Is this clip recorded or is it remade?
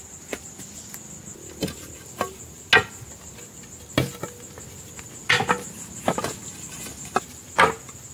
recorded